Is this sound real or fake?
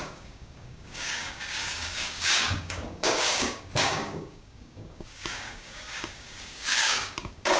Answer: fake